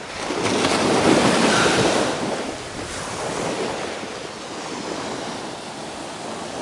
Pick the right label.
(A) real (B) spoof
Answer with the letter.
A